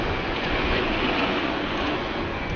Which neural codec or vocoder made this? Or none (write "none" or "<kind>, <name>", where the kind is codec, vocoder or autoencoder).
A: vocoder, Vocos